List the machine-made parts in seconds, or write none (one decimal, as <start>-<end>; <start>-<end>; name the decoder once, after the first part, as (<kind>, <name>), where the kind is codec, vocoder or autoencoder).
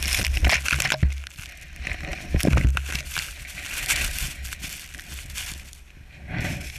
none